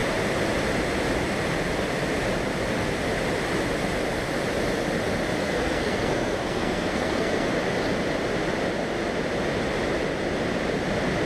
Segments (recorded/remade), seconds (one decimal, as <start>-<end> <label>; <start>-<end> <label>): 0.0-5.4 recorded; 5.4-7.5 remade; 7.5-11.3 recorded